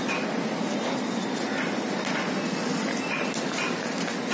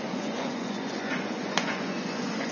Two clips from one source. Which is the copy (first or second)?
second